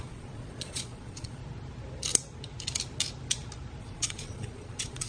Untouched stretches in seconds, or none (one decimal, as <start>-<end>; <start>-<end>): 1.4-3.8